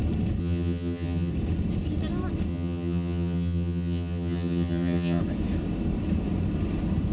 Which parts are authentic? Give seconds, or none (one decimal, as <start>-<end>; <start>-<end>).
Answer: 0.0-0.4; 1.3-2.5; 5.2-7.1